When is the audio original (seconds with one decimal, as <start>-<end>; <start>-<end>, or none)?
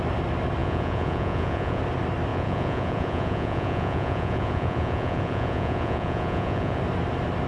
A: 0.0-0.6; 1.8-2.3; 6.8-7.5